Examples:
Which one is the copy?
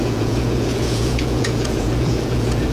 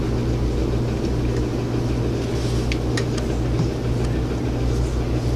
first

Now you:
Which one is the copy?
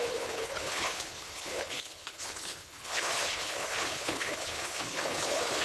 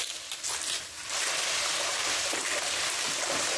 first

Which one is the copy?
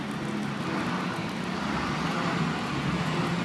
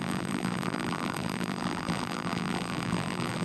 second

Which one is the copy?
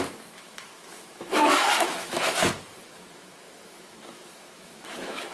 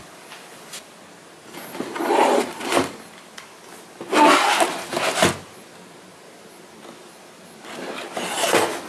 first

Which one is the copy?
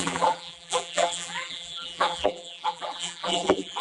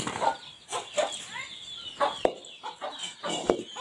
first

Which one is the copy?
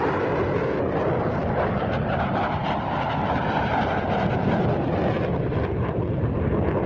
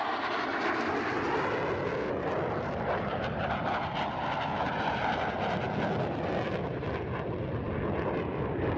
first